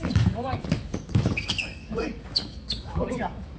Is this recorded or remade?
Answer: remade